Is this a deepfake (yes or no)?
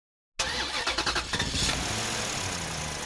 no